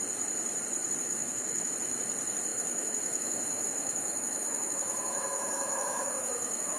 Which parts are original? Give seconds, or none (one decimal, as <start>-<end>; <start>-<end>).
0.0-1.0; 1.7-2.5